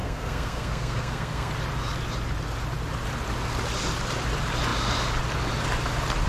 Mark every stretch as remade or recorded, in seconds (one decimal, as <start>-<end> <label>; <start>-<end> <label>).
0.0-1.5 remade; 1.5-6.3 recorded